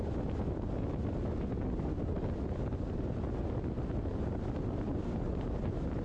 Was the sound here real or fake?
real